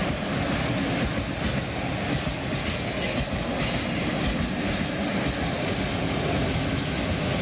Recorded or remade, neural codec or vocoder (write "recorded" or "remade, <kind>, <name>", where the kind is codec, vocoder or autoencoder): recorded